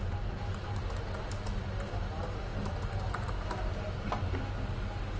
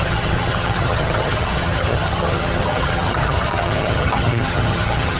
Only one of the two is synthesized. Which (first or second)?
second